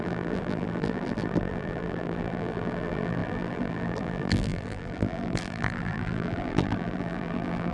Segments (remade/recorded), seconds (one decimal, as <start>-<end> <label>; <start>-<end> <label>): 0.0-7.7 remade